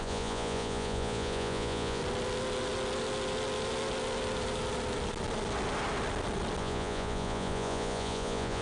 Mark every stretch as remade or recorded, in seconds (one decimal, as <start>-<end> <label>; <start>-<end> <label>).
0.0-2.0 remade; 2.0-6.6 recorded; 6.6-8.6 remade